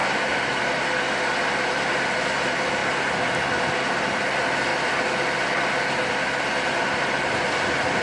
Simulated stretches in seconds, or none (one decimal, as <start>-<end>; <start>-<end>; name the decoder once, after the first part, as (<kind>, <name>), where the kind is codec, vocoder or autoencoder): none